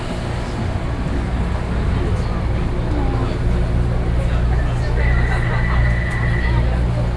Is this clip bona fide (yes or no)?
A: yes